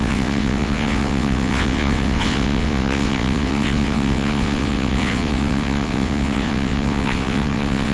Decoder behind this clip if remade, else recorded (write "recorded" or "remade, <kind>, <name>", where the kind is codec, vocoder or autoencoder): remade, vocoder, WaveNeXt